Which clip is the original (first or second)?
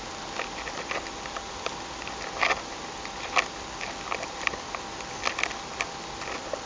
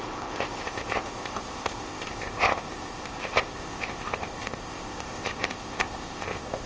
first